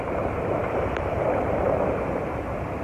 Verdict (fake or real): fake